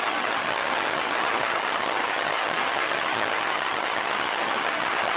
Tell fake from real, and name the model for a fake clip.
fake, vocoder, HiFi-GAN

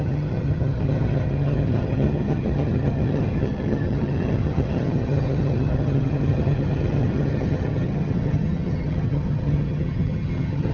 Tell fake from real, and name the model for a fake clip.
fake, vocoder, HiFi-GAN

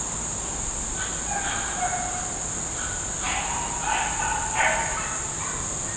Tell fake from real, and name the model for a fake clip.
real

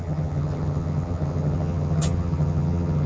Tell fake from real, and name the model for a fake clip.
fake, vocoder, HiFi-GAN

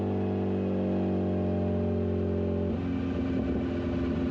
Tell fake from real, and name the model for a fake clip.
real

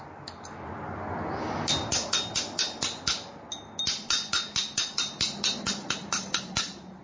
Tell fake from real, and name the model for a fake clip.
real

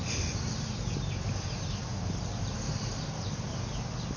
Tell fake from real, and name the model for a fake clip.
real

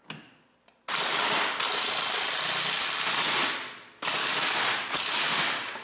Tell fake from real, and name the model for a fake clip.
real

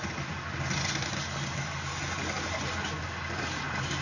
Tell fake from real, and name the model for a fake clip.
real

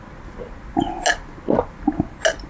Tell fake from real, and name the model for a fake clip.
real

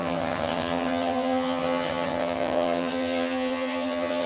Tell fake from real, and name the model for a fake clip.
fake, vocoder, HiFi-GAN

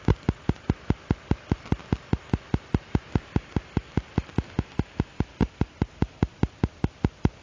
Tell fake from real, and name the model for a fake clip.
real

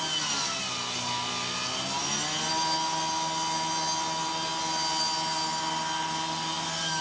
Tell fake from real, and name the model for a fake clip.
real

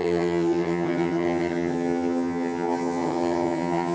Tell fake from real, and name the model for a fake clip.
fake, vocoder, HiFi-GAN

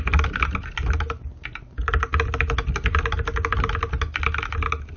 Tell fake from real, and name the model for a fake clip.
real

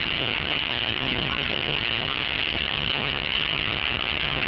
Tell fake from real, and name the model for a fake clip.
fake, vocoder, HiFi-GAN